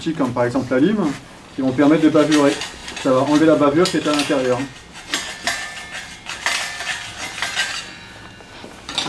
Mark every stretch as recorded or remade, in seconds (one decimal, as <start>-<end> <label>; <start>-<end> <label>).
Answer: 0.0-9.1 recorded